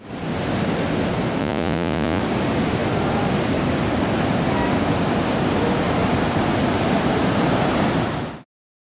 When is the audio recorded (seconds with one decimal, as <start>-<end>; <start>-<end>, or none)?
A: 0.0-1.4; 2.2-9.0